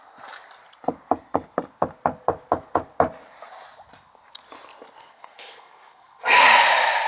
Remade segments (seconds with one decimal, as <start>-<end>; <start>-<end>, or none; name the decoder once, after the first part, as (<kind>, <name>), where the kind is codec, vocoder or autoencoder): 5.0-6.4 (codec, SNAC)